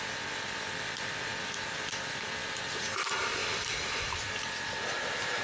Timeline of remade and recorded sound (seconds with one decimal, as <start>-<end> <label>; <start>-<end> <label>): 0.0-1.3 recorded; 1.3-2.5 remade; 2.5-3.4 recorded; 3.4-4.2 remade; 4.2-5.4 recorded